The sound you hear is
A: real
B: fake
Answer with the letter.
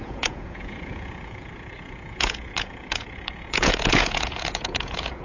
B